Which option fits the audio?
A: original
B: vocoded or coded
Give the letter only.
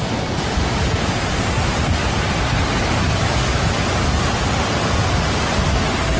A